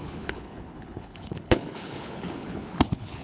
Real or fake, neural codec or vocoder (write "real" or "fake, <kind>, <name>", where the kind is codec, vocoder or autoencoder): fake, codec, HILCodec